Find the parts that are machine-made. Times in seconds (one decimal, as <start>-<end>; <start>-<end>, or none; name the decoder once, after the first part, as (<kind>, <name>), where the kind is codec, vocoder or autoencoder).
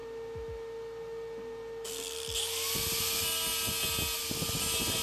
none